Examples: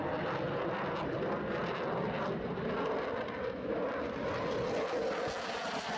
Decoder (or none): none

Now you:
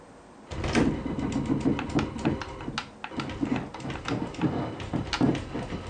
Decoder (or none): none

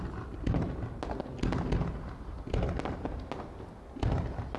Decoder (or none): none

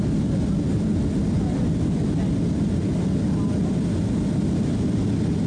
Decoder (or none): none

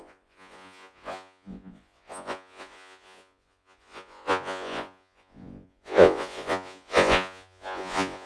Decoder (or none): vocoder, Vocos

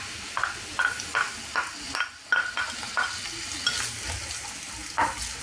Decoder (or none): none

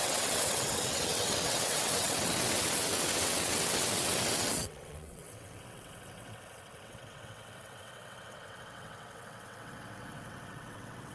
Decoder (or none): vocoder, WaveNeXt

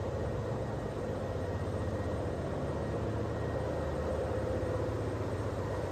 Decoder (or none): none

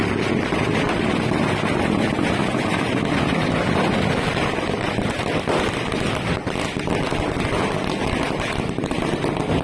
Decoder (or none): none